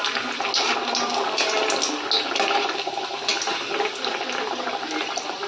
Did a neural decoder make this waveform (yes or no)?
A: no